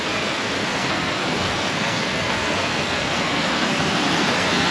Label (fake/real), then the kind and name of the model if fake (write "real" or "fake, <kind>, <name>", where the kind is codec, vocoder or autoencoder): fake, codec, SNAC